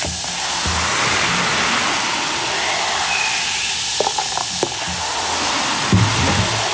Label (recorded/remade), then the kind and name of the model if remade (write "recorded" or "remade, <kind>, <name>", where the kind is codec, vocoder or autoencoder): recorded